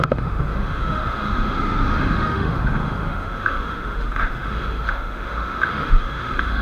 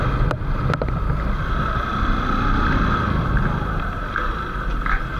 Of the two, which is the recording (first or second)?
second